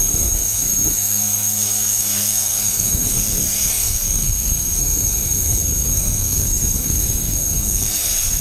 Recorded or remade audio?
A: remade